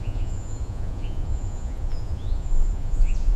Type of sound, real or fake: fake